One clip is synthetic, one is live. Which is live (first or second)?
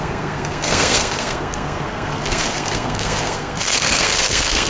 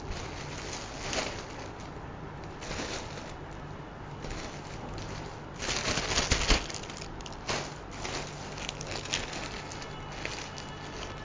second